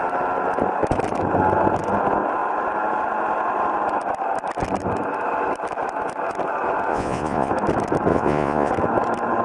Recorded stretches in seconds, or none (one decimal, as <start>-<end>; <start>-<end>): 0.0-6.9; 7.5-8.1; 8.7-9.4